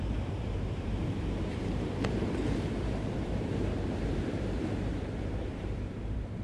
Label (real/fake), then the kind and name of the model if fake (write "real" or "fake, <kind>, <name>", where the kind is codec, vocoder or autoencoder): fake, vocoder, BigVGAN v2